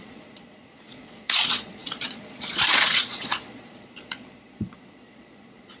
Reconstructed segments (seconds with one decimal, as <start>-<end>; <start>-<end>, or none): 0.0-5.8

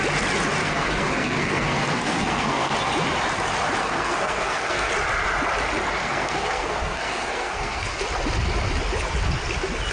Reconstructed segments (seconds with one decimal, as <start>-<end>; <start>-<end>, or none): 0.6-2.7; 3.8-4.9; 6.0-8.0

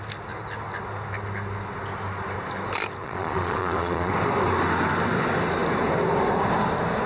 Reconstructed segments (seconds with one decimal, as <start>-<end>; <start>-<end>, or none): 3.0-4.1

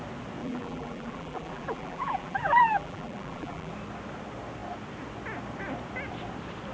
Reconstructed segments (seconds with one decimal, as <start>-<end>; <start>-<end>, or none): 0.4-3.7

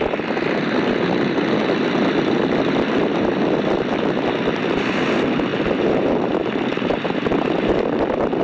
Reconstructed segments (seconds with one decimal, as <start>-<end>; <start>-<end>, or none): none